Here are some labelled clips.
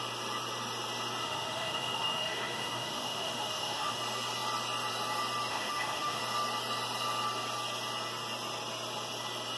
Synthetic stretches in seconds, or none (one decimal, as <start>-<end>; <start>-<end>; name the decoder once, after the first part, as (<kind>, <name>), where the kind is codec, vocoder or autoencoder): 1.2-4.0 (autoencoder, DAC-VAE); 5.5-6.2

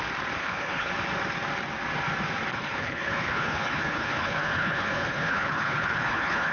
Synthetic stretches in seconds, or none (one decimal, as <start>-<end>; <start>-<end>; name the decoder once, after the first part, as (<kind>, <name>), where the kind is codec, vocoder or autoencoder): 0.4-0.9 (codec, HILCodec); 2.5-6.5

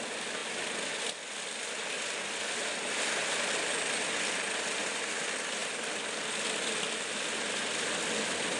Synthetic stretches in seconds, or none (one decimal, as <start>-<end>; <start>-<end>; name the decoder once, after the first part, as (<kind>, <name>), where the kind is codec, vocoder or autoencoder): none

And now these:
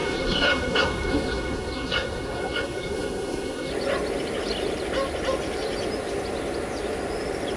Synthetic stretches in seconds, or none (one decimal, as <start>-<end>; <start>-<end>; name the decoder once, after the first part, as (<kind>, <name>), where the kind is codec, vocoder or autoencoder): 0.0-3.7 (codec, SNAC)

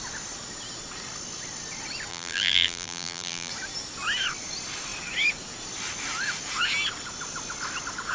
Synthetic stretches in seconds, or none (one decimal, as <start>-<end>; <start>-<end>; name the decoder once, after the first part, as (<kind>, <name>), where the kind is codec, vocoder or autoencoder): 2.1-3.5 (vocoder, BigVGAN v2)